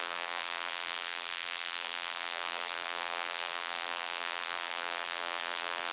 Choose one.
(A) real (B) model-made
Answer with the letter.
B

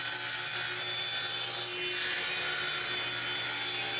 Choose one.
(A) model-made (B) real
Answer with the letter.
B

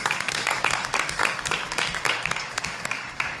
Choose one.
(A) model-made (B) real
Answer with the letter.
A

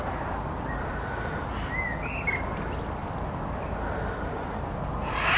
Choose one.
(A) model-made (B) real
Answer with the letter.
B